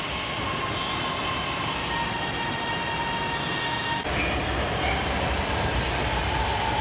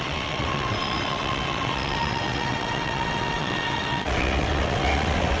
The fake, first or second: second